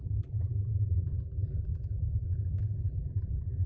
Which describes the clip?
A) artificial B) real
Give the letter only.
A